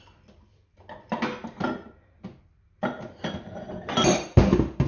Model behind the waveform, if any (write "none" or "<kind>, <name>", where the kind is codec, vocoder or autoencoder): none